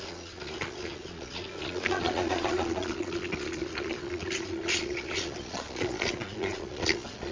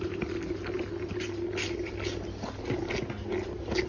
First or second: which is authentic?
second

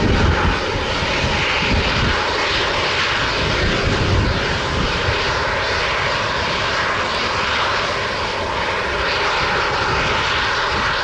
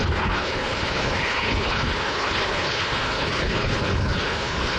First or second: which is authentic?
first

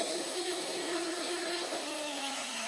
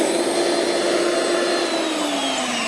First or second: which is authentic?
second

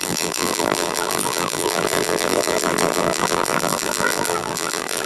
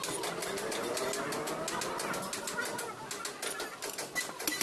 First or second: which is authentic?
second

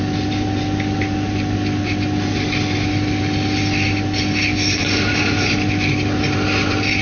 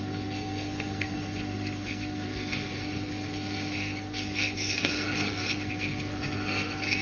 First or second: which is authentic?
first